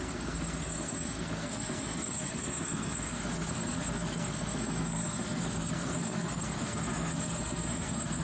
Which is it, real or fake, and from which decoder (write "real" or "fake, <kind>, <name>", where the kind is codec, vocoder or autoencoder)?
fake, codec, SNAC